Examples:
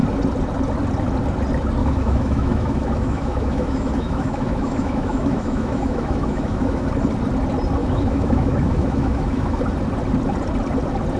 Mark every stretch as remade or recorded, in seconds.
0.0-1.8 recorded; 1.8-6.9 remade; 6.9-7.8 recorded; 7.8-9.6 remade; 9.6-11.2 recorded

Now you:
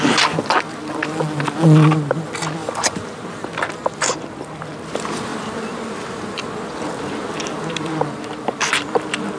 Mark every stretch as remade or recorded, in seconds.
0.0-9.4 recorded

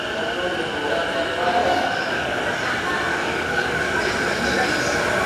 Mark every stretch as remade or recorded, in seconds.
0.0-1.6 recorded; 1.6-2.4 remade; 2.4-3.1 recorded; 3.1-3.9 remade; 3.9-5.3 recorded

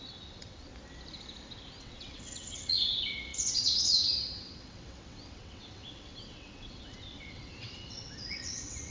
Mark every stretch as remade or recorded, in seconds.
0.0-0.7 remade; 0.7-1.8 recorded; 1.8-8.9 remade

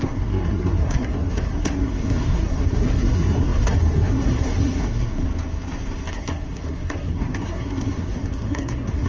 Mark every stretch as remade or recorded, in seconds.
0.0-5.2 remade; 5.2-6.1 recorded; 6.1-9.1 remade